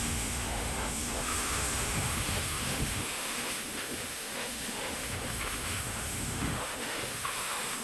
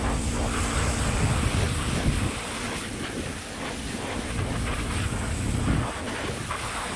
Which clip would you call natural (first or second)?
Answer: second